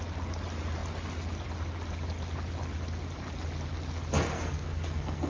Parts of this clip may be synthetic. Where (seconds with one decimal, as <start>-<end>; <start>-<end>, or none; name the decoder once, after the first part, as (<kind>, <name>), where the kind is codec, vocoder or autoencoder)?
4.3-5.3 (codec, SNAC)